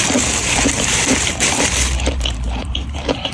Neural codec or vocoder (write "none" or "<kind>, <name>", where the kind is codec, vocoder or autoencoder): vocoder, BigVGAN v2